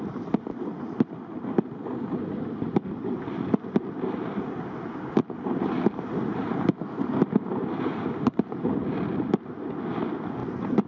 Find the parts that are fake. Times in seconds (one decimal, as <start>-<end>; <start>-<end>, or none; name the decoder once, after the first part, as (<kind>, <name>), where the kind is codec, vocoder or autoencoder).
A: 6.3-8.8 (vocoder, BigVGAN v2)